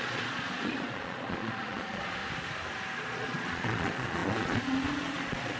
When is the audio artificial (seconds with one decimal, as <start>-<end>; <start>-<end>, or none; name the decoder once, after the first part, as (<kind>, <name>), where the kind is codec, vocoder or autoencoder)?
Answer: 0.0-2.2 (vocoder, Vocos); 3.0-5.6